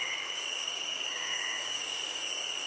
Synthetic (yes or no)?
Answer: yes